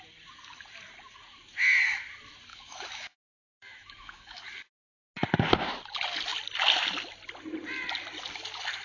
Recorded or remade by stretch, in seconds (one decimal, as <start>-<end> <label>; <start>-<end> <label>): 0.0-2.5 recorded; 2.5-4.4 remade; 4.4-8.8 recorded

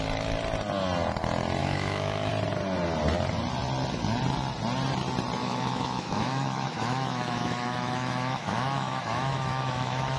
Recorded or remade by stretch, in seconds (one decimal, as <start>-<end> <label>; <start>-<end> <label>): 0.0-1.6 recorded; 1.6-2.3 remade; 2.3-5.4 recorded; 5.4-10.2 remade

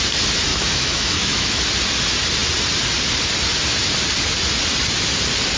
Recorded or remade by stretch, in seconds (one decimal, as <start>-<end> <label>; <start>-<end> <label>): 0.0-0.5 recorded; 0.5-1.6 remade; 1.6-5.6 recorded

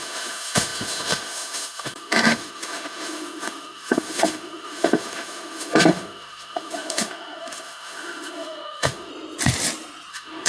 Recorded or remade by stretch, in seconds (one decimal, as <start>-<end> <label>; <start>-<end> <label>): 0.0-9.1 remade; 9.1-10.1 recorded; 10.1-10.5 remade

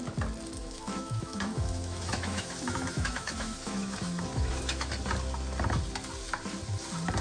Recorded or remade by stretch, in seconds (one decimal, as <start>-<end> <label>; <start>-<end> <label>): 0.0-0.6 recorded; 0.6-4.9 remade; 4.9-7.2 recorded

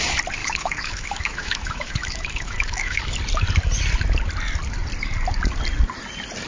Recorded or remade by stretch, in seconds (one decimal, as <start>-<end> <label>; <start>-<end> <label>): 0.0-0.4 recorded; 0.4-3.0 remade; 3.0-6.5 recorded